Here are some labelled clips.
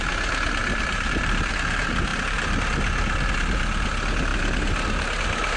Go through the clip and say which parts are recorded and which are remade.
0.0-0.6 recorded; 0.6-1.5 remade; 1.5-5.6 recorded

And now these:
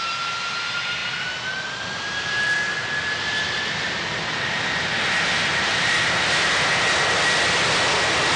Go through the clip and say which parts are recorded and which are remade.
0.0-8.4 recorded